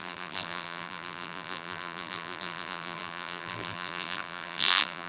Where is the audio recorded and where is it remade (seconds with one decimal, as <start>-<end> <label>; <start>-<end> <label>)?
0.0-5.1 remade